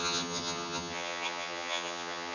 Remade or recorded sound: remade